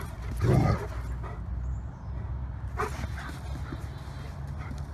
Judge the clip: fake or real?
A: real